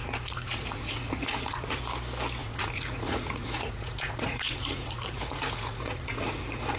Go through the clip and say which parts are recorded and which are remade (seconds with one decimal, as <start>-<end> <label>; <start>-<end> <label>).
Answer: 0.0-1.8 remade; 1.8-2.4 recorded; 2.4-6.8 remade